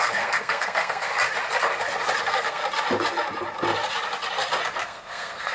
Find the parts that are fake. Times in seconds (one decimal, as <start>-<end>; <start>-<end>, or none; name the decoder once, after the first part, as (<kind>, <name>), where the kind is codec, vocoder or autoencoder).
0.0-1.1 (codec, SNAC); 2.2-2.6; 4.8-5.5